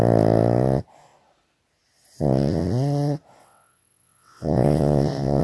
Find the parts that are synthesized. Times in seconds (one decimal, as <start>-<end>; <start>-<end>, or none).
3.4-5.4